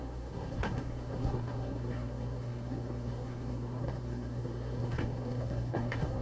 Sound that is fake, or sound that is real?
fake